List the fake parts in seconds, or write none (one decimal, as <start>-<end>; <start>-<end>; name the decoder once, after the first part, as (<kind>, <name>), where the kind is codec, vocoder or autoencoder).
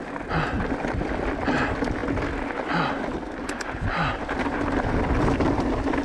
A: none